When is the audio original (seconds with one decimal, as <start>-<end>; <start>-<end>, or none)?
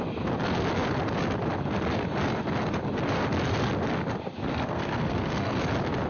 0.0-4.4; 5.6-6.1